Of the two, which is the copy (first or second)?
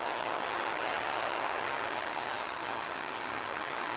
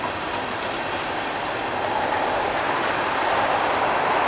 first